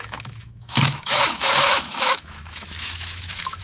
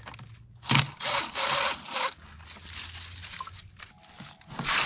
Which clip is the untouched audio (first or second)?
second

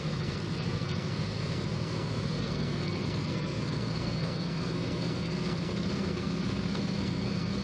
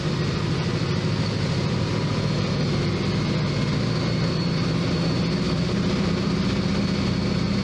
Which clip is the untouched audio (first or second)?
second